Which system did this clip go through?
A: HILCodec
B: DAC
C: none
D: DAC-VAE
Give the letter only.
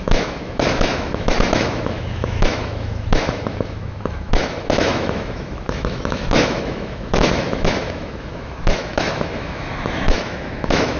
D